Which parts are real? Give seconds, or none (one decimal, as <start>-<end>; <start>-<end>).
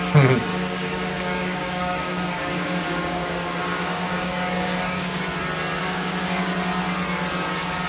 0.0-0.5; 5.2-5.8; 6.4-7.9